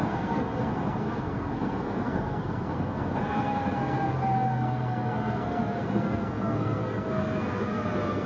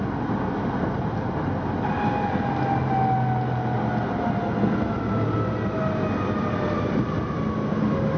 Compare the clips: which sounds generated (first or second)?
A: first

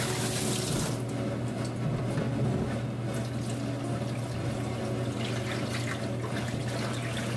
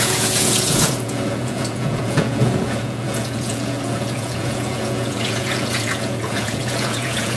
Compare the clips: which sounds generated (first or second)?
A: second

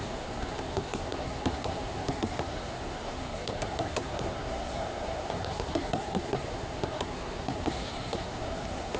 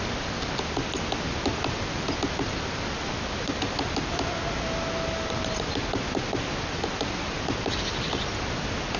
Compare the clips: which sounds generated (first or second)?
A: first